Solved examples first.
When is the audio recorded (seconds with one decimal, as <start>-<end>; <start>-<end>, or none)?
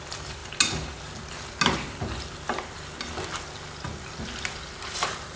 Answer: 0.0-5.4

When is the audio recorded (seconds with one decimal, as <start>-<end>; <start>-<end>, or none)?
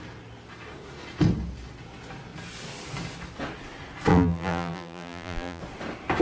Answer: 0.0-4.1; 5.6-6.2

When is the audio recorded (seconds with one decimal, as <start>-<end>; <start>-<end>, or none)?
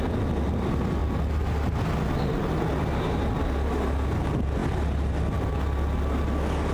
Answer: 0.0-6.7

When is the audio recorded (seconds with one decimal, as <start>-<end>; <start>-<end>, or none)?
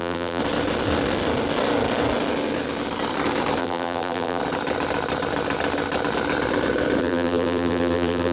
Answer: 0.4-3.6; 4.4-7.0